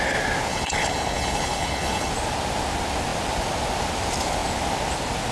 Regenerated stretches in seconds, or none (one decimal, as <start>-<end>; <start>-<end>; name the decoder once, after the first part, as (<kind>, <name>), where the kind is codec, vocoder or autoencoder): 0.5-2.1 (codec, HILCodec)